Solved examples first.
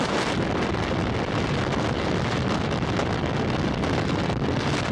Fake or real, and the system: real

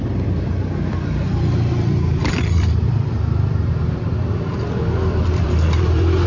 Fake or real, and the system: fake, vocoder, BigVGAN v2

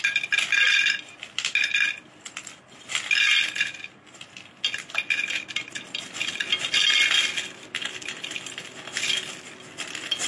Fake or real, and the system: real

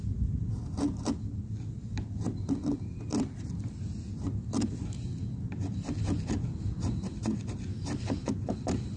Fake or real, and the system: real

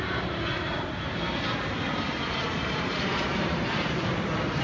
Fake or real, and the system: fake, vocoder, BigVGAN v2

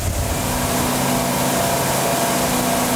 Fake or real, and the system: real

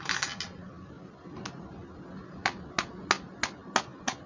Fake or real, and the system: real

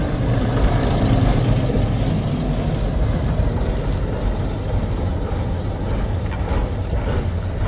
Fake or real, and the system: real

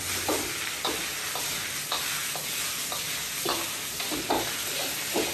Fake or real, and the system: real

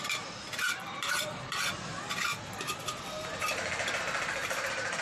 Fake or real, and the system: fake, vocoder, BigVGAN v2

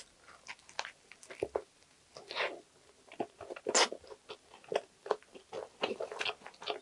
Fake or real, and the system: real